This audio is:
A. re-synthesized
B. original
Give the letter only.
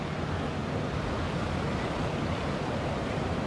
B